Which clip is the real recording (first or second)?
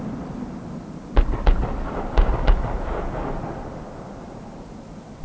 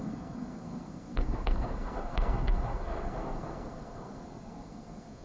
first